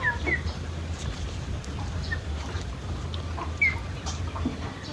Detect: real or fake real